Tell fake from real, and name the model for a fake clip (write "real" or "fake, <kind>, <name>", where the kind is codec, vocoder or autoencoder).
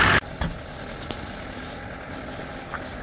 real